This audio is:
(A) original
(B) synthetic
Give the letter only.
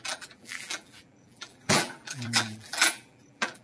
B